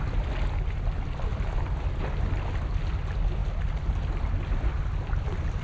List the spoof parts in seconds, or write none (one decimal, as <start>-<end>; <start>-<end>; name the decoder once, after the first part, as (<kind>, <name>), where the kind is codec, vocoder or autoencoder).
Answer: none